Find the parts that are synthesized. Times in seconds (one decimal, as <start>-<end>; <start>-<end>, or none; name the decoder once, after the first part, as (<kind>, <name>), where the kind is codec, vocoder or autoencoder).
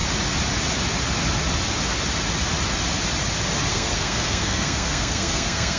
3.7-5.8 (codec, SNAC)